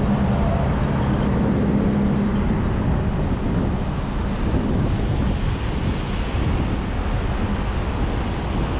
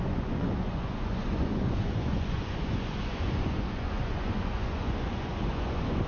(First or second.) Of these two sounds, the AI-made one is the second